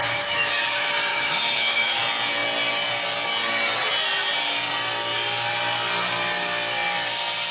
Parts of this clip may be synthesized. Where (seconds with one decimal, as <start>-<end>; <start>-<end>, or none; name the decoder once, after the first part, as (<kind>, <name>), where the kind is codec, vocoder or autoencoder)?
0.0-0.5 (autoencoder, DAC-VAE); 1.1-2.0